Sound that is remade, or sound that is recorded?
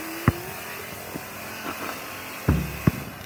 recorded